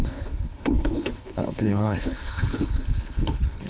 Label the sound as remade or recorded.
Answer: remade